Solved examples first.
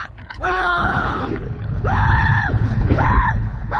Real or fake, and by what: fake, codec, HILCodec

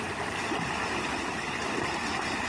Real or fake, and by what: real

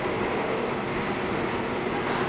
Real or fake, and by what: real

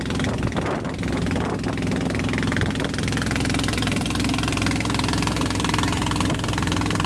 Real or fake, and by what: real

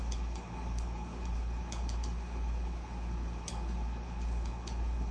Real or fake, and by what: fake, codec, HILCodec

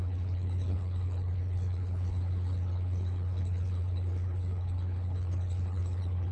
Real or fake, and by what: fake, codec, HILCodec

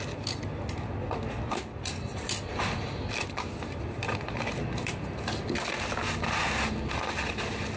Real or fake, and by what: real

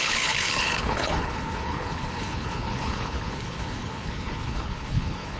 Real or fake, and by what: fake, codec, HILCodec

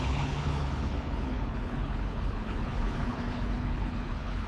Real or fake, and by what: fake, codec, HILCodec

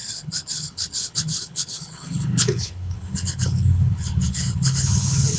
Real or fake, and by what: fake, codec, HILCodec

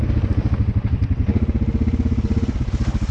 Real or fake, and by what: real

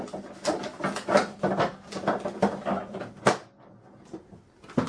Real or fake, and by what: real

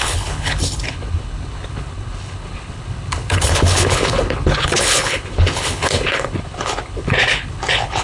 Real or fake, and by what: fake, codec, HILCodec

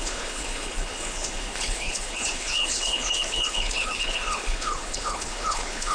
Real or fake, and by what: fake, codec, HILCodec